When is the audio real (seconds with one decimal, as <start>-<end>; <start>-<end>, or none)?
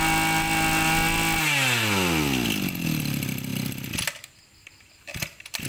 0.0-5.7